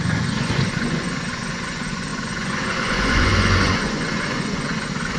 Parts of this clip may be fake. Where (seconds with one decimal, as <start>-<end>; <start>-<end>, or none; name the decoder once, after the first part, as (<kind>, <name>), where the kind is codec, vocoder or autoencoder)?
0.0-5.2 (vocoder, Vocos)